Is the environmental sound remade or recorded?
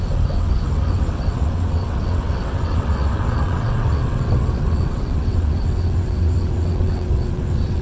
remade